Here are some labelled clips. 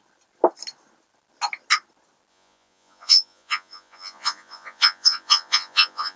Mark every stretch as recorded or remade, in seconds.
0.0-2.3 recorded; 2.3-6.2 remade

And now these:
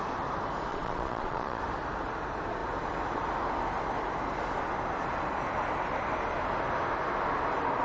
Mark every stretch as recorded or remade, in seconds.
0.0-0.7 recorded; 0.7-1.6 remade; 1.6-7.8 recorded

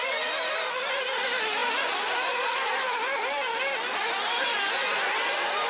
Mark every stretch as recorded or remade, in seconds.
0.0-5.7 recorded